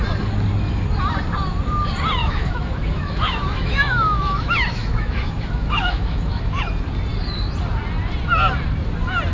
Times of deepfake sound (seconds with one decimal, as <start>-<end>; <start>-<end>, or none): 2.2-6.6